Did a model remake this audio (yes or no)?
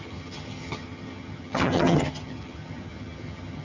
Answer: yes